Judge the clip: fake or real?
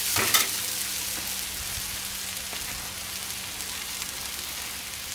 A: real